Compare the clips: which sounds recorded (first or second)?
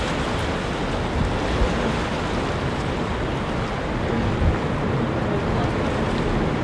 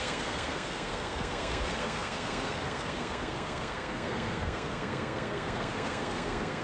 first